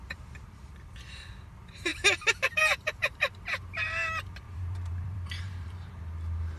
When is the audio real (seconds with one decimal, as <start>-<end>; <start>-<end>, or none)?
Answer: 0.0-3.0; 5.9-6.6